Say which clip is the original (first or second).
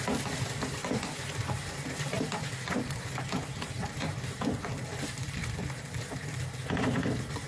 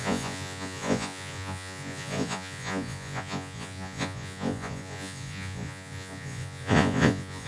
first